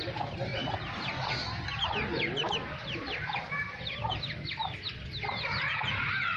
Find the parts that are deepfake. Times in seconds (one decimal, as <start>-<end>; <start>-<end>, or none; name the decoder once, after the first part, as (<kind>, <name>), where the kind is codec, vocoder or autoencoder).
none